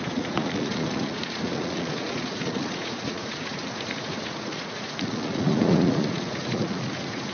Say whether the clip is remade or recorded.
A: remade